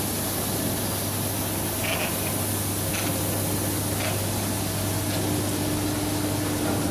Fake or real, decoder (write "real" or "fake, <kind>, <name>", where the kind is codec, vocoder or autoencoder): real